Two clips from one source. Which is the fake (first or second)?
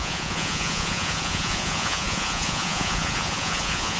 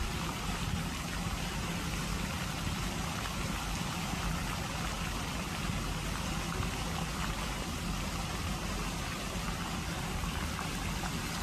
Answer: first